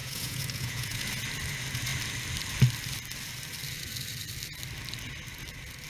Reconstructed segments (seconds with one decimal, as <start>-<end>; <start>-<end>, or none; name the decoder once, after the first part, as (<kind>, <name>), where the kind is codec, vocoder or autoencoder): 0.0-1.1 (vocoder, Vocos)